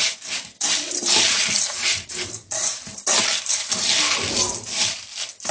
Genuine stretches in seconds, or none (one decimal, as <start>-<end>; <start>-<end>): 0.0-5.5